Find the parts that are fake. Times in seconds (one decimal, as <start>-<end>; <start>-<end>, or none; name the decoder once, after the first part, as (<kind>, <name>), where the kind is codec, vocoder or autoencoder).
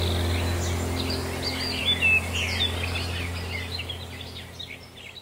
none